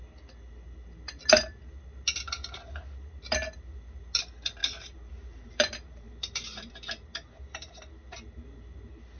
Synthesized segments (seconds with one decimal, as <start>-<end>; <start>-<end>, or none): 4.6-6.7